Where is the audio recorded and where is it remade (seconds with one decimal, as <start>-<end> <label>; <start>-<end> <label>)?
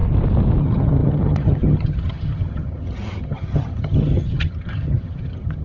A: 0.0-0.6 recorded; 0.6-5.6 remade